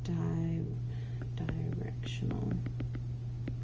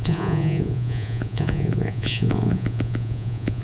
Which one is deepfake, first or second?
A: second